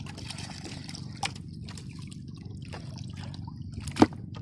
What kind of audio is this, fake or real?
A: real